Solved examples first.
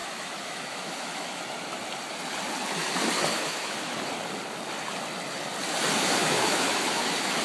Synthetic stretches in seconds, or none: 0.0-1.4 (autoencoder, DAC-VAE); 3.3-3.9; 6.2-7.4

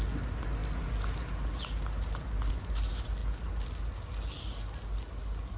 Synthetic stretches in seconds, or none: none

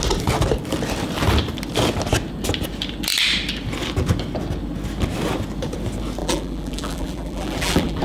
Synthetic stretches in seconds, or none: 6.2-8.0 (vocoder, BigVGAN v2)

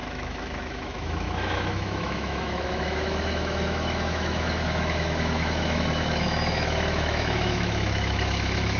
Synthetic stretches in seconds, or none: 0.0-8.8 (autoencoder, DAC-VAE)

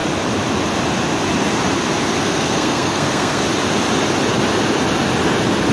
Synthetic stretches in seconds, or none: 2.2-3.4 (codec, SNAC)

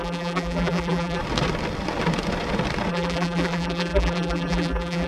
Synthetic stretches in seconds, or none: 0.0-1.2 (vocoder, BigVGAN v2); 2.9-5.1